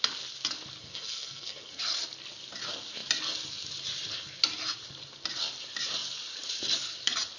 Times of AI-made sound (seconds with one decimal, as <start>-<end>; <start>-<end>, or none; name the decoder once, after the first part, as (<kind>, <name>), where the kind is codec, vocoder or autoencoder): 0.8-1.8 (codec, SNAC)